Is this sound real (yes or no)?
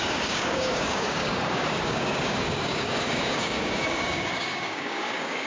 no